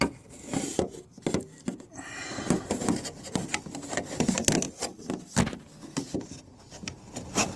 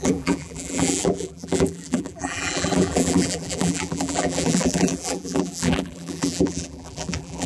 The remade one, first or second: second